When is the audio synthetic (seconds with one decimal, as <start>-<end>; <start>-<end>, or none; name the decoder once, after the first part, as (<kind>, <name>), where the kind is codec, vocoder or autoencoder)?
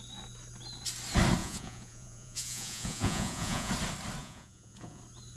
1.4-3.7 (vocoder, Vocos); 4.2-5.0